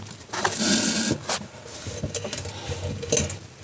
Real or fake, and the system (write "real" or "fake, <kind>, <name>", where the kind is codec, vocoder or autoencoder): real